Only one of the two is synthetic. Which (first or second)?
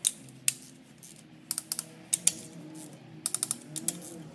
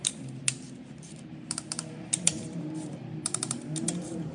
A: second